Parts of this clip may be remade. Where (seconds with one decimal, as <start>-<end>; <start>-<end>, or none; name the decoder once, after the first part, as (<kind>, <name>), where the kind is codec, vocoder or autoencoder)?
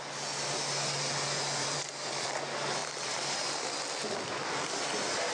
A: 1.6-2.4 (vocoder, BigVGAN v2); 2.8-3.4